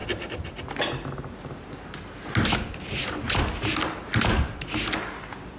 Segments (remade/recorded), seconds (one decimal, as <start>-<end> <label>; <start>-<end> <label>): 0.0-5.6 recorded